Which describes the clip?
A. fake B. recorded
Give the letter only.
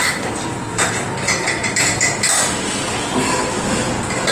B